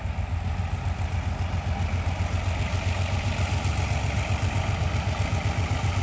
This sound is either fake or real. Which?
real